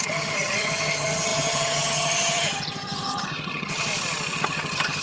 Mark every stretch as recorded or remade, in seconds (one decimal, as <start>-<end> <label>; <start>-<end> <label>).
0.0-3.9 remade; 3.9-4.4 recorded; 4.4-5.0 remade